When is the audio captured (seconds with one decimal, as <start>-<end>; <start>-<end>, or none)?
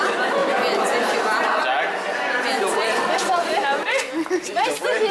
0.0-5.1